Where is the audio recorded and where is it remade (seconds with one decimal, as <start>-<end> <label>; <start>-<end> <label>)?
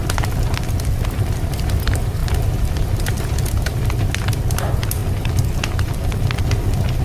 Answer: 0.0-7.0 recorded